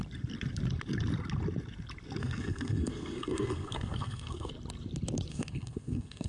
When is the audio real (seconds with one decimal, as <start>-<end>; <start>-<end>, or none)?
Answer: 0.0-2.2; 4.5-5.3